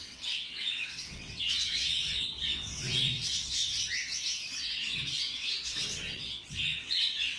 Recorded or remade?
remade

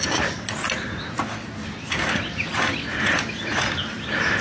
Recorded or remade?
recorded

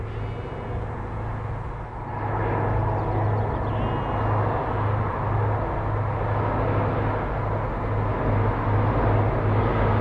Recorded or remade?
recorded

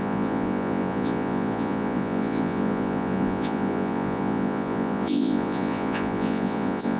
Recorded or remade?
remade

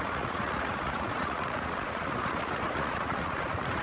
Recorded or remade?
remade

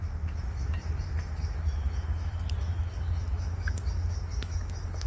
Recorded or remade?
remade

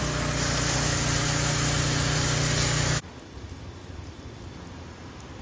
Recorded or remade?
recorded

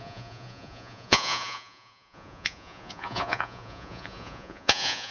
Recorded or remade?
remade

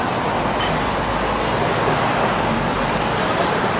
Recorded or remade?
recorded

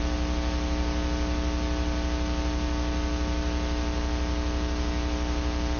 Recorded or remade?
recorded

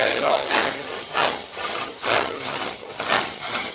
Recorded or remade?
remade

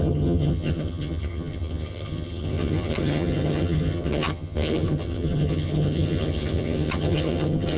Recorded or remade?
remade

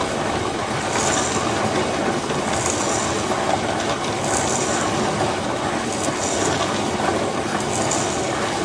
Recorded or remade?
recorded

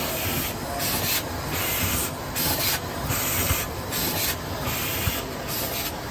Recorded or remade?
recorded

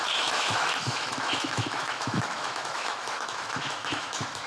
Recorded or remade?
remade